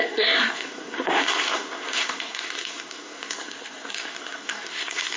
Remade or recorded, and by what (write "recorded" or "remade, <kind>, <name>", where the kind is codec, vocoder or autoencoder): remade, codec, SNAC